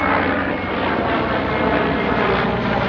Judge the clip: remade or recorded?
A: recorded